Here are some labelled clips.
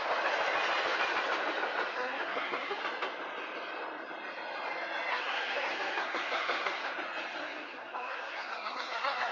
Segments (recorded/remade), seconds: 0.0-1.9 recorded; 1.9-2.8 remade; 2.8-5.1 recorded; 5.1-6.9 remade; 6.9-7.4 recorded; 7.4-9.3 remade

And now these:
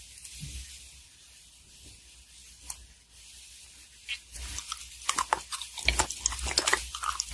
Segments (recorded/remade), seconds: 0.0-7.3 recorded

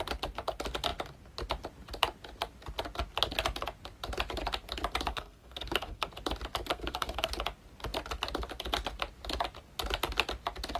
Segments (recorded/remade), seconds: 0.0-5.1 recorded; 5.1-6.1 remade; 6.1-6.7 recorded; 6.7-7.3 remade; 7.3-10.8 recorded

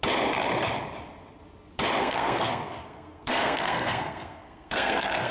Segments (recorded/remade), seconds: 0.0-2.0 recorded; 2.0-5.3 remade

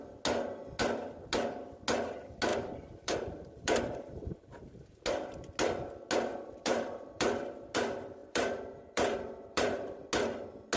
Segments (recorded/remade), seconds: 0.0-2.5 recorded; 2.5-4.6 remade; 4.6-6.3 recorded; 6.3-7.4 remade; 7.4-8.2 recorded; 8.2-10.1 remade; 10.1-10.8 recorded

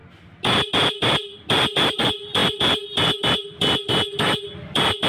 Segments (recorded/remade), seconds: 0.0-5.1 recorded

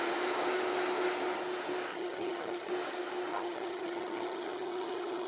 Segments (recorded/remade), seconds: 0.0-1.9 recorded; 1.9-2.7 remade; 2.7-3.3 recorded; 3.3-5.3 remade

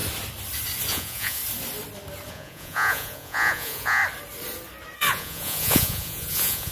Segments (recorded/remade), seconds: 0.0-0.9 recorded; 0.9-1.4 remade; 1.4-2.3 recorded; 2.3-4.0 remade; 4.0-5.1 recorded; 5.1-6.7 remade